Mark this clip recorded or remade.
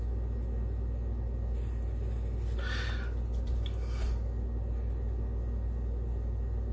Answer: recorded